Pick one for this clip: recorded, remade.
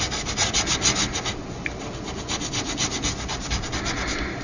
recorded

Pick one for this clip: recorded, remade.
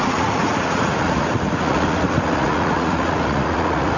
remade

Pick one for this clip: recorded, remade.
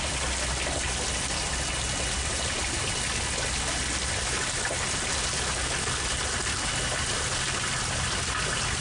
recorded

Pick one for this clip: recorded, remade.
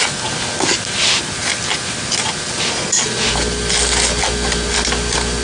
recorded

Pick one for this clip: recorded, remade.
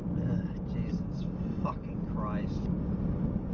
recorded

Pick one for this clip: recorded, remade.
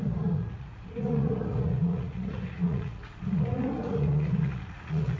remade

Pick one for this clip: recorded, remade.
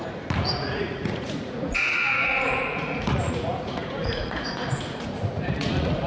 remade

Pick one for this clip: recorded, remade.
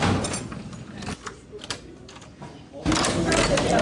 recorded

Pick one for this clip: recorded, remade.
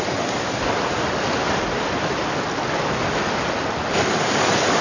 recorded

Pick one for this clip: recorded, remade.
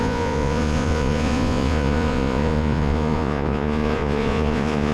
remade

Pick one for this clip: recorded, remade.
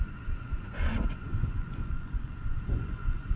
remade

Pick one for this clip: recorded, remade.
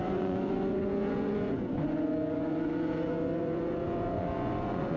remade